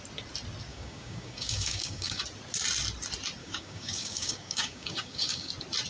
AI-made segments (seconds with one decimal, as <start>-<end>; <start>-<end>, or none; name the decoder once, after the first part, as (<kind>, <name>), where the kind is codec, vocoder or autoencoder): 0.7-2.2 (codec, DAC); 3.4-5.5